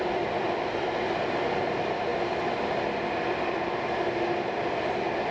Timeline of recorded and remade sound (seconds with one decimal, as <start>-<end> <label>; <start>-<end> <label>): 0.0-5.3 recorded